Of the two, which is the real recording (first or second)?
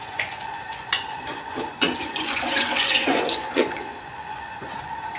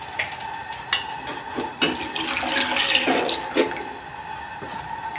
second